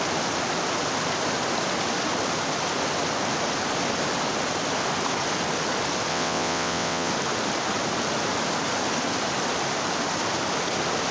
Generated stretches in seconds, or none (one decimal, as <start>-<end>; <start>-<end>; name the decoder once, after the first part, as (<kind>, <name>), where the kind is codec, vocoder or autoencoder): 6.1-7.1 (vocoder, WaveNeXt)